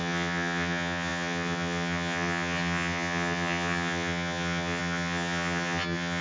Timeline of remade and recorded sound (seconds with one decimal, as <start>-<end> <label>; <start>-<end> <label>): 0.0-6.2 remade